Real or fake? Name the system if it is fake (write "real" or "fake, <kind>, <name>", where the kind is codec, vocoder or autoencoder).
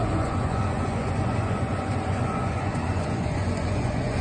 fake, vocoder, Vocos